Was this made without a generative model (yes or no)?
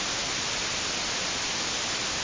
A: yes